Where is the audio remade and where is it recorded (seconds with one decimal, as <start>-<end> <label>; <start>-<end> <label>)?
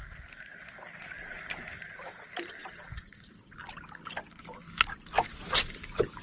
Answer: 0.0-6.2 recorded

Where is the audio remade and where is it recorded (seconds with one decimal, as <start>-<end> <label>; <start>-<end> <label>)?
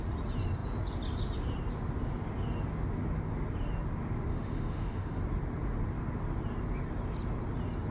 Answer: 0.0-4.3 recorded; 4.3-5.2 remade; 5.2-7.9 recorded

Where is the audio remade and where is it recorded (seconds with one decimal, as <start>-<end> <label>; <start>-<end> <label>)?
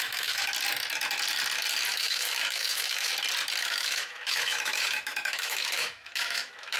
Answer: 0.0-0.5 remade; 0.5-1.9 recorded; 1.9-3.1 remade; 3.1-3.6 recorded; 3.6-6.8 remade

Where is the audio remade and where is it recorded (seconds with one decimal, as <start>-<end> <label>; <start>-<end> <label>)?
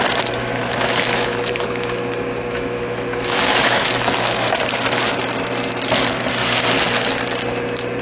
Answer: 0.0-0.4 recorded; 0.4-5.2 remade; 5.2-8.0 recorded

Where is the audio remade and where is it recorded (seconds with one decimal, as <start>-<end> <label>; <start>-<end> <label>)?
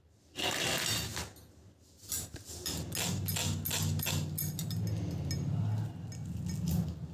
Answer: 0.0-7.1 recorded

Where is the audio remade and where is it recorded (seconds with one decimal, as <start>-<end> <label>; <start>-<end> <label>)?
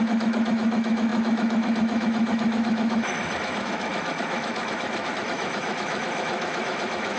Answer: 0.0-7.2 remade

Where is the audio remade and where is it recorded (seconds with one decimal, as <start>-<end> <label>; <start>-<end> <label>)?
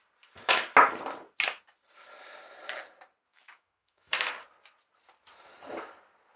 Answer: 0.0-3.3 recorded; 3.3-4.3 remade; 4.3-6.4 recorded